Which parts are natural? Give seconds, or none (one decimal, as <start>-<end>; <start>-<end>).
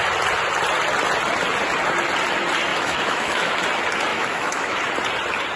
0.0-2.7; 3.5-4.1; 4.8-5.6